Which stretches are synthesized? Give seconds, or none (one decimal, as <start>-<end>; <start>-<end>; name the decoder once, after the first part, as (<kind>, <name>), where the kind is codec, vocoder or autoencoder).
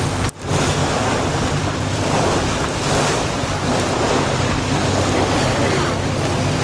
0.8-4.0 (vocoder, BigVGAN v2)